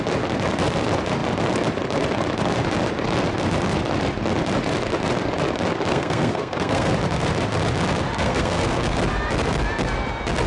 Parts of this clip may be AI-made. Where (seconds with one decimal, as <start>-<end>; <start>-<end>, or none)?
5.9-6.9; 8.2-9.0